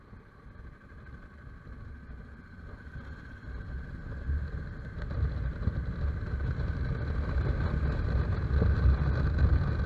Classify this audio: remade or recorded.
recorded